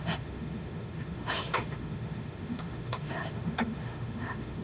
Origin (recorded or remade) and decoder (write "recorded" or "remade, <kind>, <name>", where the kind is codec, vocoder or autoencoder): remade, autoencoder, DAC-VAE